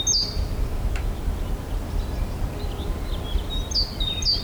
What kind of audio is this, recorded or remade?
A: recorded